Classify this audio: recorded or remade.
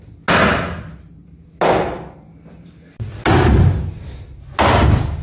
recorded